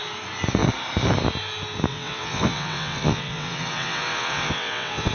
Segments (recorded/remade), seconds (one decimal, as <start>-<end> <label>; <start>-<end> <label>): 0.0-1.9 recorded; 1.9-5.1 remade